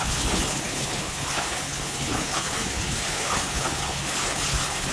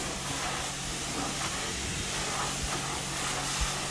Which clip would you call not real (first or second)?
first